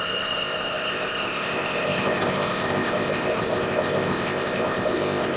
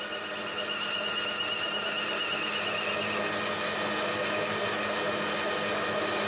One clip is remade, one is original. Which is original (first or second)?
second